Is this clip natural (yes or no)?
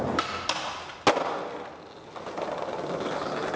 yes